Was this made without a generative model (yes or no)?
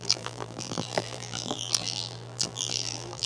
no